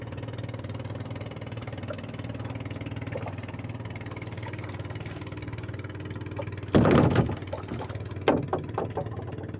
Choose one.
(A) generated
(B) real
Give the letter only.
B